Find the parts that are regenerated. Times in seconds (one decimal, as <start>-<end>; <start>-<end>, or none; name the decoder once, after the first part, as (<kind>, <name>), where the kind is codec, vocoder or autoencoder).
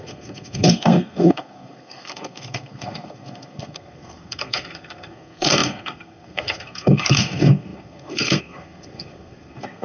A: 0.0-9.8 (codec, SNAC)